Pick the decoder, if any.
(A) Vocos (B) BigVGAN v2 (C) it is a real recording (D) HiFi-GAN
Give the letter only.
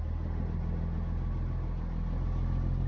C